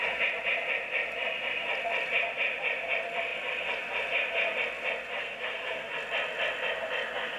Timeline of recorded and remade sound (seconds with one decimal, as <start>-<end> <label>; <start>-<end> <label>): 0.0-5.2 recorded; 5.2-5.9 remade; 5.9-7.4 recorded